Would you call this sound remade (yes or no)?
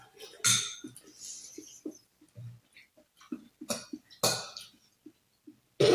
no